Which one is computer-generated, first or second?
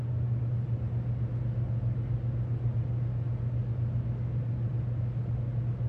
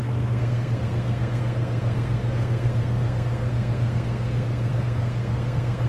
second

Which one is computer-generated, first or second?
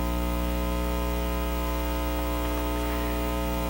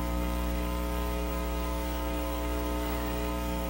second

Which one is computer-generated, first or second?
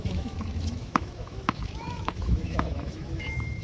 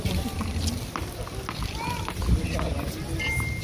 first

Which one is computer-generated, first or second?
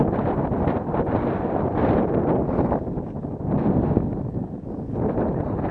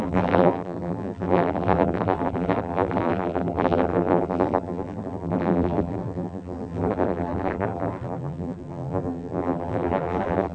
second